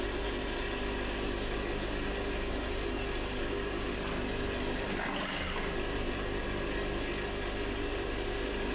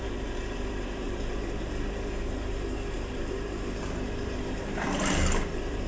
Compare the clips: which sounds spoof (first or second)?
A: second